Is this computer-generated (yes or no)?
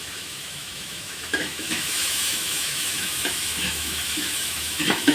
yes